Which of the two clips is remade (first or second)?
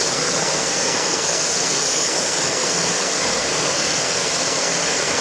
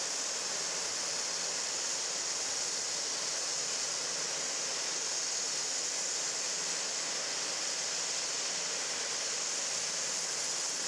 first